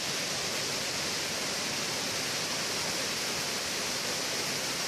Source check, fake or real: real